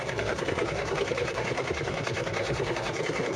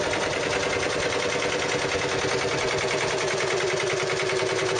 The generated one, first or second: first